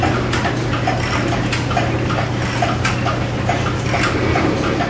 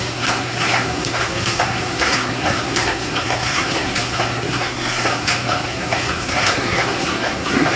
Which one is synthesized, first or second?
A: second